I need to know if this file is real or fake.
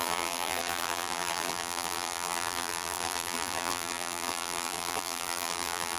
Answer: fake